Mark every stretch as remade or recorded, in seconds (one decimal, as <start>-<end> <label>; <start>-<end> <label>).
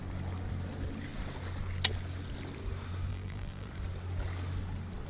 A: 0.0-3.1 recorded; 3.1-3.7 remade; 3.7-5.1 recorded